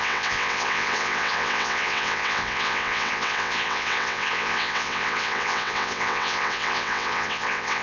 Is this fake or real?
fake